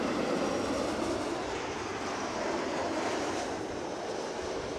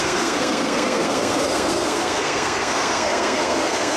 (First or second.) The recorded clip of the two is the first